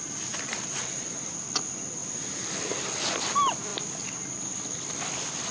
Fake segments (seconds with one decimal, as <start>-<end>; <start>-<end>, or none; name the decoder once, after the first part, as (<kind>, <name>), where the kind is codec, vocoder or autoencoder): none